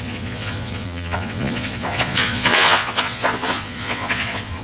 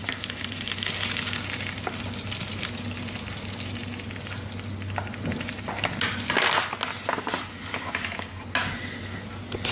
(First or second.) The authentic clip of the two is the second